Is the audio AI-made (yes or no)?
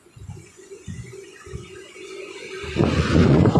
yes